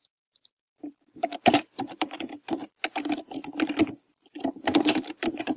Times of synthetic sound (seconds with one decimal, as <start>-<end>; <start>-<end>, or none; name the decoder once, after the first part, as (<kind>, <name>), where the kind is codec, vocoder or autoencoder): 0.0-2.6 (vocoder, BigVGAN v2); 3.9-5.6